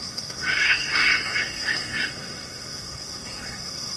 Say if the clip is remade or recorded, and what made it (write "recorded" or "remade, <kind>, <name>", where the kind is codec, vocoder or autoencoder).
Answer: remade, codec, SNAC